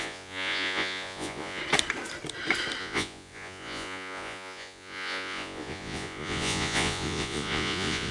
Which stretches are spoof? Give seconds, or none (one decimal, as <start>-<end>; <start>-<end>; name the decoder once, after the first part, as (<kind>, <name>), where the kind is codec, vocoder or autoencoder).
0.0-1.6 (vocoder, Vocos); 2.8-8.1

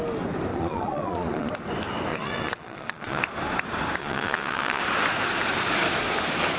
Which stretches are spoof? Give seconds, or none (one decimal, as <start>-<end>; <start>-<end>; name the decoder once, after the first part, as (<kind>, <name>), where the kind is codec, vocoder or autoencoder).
0.5-1.5 (vocoder, Vocos); 2.1-3.2; 4.0-4.8

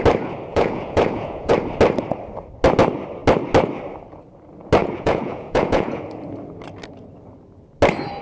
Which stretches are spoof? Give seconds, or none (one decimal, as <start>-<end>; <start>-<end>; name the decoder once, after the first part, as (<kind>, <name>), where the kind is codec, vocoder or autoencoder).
0.5-1.5 (vocoder, Vocos); 4.8-6.0

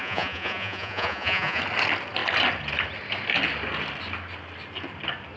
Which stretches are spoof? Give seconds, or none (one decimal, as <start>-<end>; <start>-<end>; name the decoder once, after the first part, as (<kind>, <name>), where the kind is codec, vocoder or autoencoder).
0.0-1.6 (vocoder, Vocos)

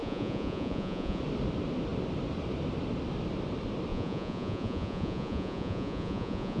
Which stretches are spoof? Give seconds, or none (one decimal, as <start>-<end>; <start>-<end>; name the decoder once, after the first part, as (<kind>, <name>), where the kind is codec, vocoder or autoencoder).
0.0-1.2 (vocoder, Vocos); 3.9-6.6

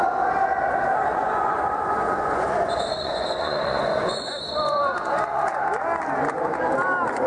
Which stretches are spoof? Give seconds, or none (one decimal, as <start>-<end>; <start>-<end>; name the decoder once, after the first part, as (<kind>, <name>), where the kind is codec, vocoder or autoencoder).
1.1-5.5 (vocoder, Vocos)